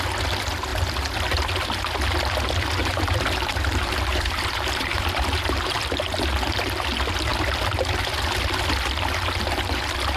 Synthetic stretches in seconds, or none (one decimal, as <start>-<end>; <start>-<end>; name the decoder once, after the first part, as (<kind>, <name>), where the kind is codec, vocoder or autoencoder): 2.8-5.8 (vocoder, BigVGAN v2)